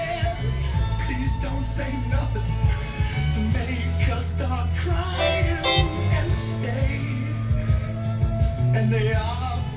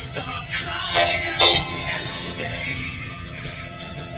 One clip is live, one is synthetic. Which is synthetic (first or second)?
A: second